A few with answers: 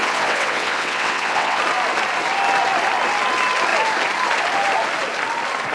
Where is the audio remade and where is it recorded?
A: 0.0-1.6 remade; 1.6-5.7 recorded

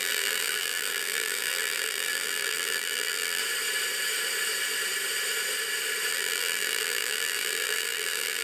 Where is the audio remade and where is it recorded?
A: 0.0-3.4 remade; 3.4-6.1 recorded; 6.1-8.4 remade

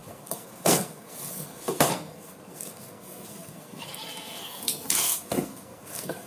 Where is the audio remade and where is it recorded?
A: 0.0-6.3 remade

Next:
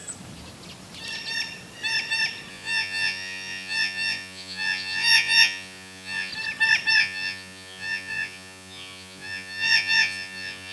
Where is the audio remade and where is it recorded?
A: 0.0-2.5 recorded; 2.5-6.3 remade; 6.3-7.0 recorded; 7.0-10.7 remade